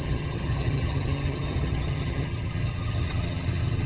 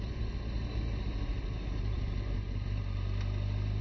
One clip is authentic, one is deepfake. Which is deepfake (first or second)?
first